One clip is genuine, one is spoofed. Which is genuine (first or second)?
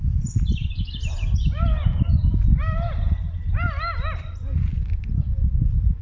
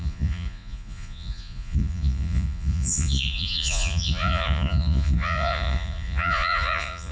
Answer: first